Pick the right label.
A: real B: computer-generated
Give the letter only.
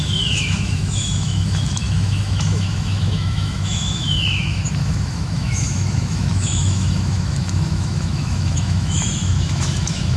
B